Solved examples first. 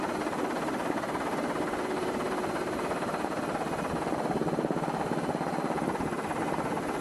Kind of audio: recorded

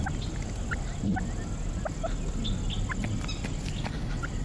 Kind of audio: recorded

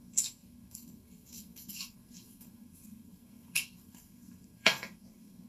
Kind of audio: remade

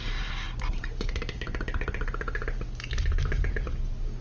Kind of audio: recorded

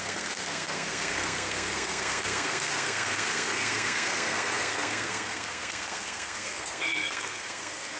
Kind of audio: remade